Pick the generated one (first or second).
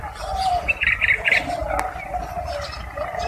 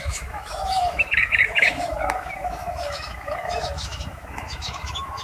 second